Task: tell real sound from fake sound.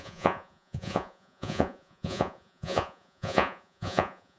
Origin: fake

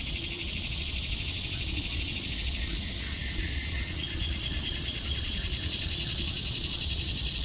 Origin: fake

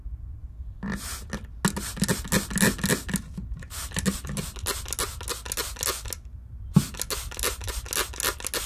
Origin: real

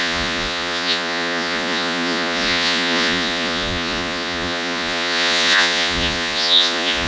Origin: fake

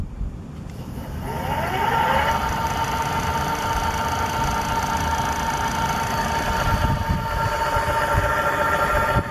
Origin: real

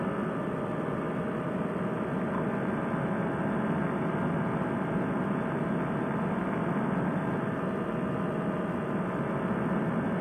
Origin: real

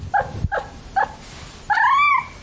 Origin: real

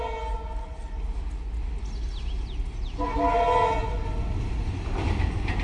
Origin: real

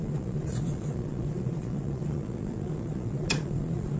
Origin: fake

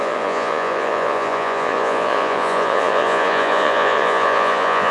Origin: fake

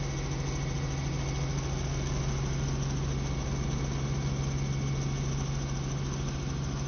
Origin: real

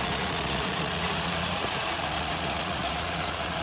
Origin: fake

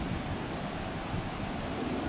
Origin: real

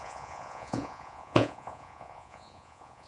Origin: fake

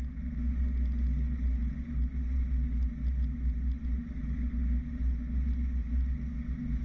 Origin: real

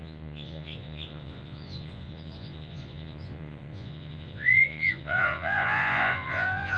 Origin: fake